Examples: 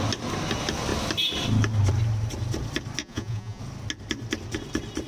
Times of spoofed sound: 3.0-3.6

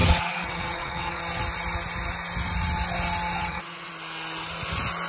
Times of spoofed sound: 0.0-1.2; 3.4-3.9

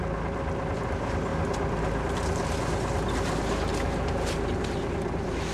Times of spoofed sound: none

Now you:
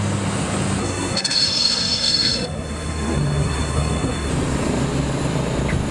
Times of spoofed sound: 0.8-4.3

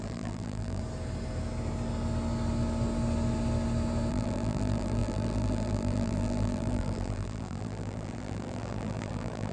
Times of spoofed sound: 0.0-0.8; 4.1-9.5

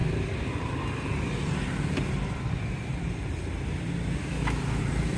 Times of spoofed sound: 4.2-4.8

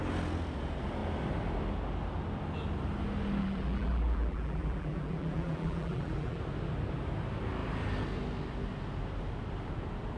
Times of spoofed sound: 3.4-6.4